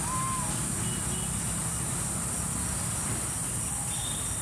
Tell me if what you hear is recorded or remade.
recorded